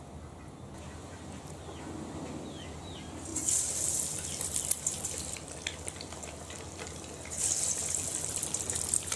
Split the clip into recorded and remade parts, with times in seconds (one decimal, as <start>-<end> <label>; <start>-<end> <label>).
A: 0.0-9.2 recorded